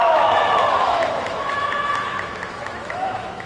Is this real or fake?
fake